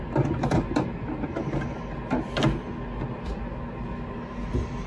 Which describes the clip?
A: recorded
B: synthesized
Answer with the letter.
A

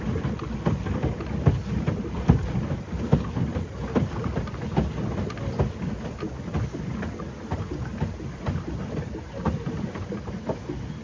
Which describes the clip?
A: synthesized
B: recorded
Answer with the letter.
B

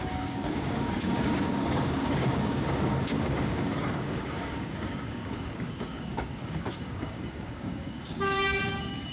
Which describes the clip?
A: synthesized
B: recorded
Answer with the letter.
A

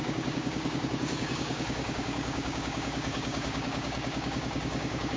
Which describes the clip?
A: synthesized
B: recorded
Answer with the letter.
A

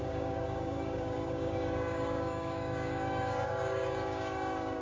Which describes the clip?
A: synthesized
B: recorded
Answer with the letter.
A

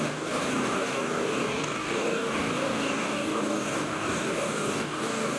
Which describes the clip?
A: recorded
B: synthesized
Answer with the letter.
B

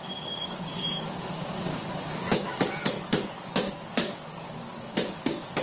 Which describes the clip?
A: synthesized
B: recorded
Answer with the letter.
A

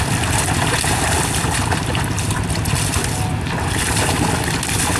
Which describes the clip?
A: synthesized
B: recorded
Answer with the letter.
B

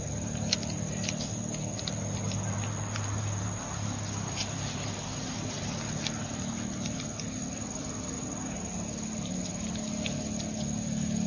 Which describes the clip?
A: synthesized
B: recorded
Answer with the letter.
B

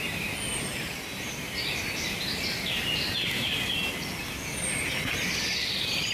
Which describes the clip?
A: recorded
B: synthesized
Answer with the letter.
A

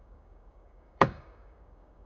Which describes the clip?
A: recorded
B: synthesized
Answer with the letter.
B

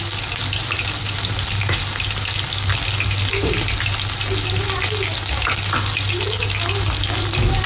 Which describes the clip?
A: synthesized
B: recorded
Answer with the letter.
B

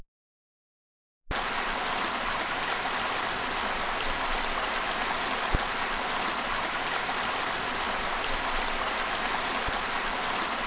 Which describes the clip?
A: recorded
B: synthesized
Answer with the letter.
A